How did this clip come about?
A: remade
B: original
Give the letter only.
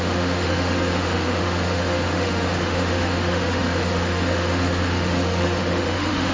A